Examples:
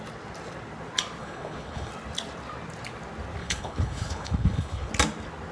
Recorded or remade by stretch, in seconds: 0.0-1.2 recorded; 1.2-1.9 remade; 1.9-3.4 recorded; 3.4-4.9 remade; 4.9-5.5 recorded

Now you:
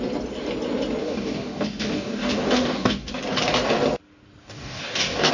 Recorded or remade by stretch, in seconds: 0.0-1.0 recorded; 1.0-3.2 remade; 3.2-4.4 recorded; 4.4-5.3 remade

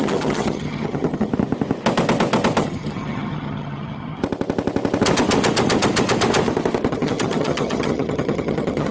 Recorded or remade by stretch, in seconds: 0.0-1.3 remade; 1.3-2.6 recorded; 2.6-4.2 remade; 4.2-6.9 recorded; 6.9-8.9 remade

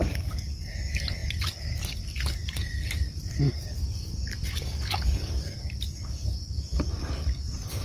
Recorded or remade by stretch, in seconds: 0.0-7.8 remade